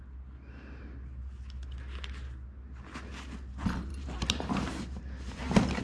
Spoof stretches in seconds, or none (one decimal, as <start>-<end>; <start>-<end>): 3.9-5.8